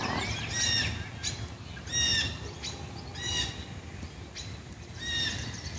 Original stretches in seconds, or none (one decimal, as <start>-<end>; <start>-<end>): 0.0-5.8